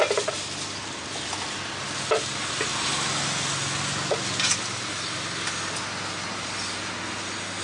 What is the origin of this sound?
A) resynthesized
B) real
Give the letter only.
B